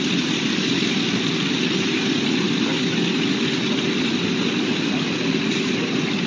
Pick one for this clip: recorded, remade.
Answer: recorded